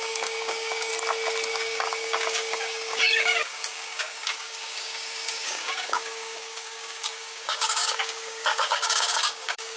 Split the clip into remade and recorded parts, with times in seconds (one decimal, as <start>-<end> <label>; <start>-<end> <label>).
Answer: 0.0-0.9 remade; 0.9-1.5 recorded; 1.5-9.8 remade